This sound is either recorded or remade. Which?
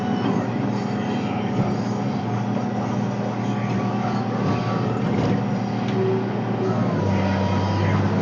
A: recorded